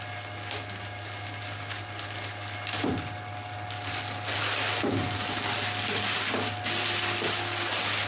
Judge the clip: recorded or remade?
recorded